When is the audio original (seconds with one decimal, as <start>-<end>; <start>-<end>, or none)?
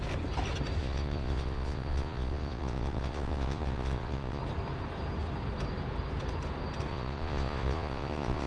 0.0-0.8; 4.4-6.9